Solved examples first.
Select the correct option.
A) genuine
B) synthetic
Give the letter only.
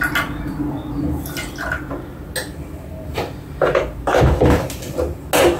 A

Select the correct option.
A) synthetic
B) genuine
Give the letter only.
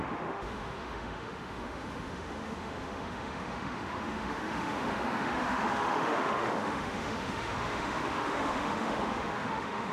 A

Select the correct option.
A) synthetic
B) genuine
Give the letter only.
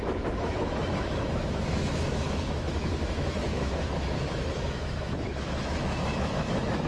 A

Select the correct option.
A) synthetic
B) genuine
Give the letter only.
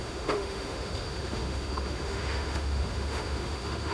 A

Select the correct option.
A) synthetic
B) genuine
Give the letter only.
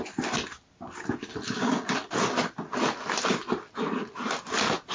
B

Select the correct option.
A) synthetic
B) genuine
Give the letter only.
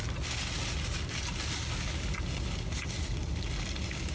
B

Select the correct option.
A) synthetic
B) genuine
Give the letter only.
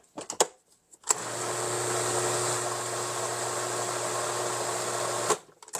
B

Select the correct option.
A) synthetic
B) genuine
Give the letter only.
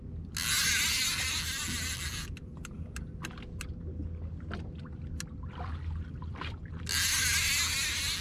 B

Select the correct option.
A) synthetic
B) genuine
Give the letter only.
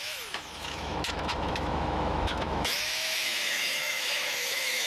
A